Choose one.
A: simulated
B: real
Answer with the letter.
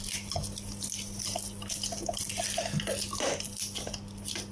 B